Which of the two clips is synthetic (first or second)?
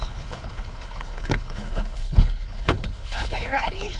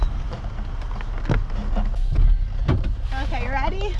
first